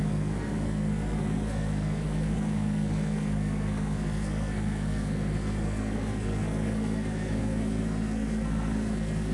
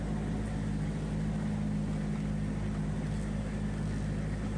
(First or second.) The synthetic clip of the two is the first